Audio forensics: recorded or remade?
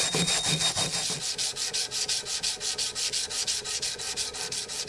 recorded